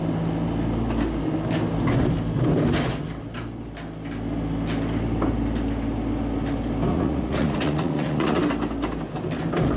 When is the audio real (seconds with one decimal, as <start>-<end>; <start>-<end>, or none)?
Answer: 0.0-6.9; 8.4-9.8